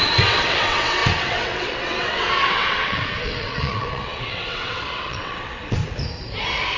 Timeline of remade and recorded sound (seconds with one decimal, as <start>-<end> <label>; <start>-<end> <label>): 0.0-5.8 remade; 5.8-6.8 recorded